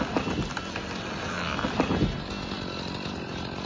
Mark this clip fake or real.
real